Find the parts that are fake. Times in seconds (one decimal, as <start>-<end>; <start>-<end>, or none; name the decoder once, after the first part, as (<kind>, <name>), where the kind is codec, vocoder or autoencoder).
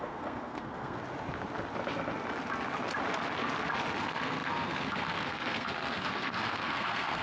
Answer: 0.0-1.0 (codec, SNAC); 4.0-7.2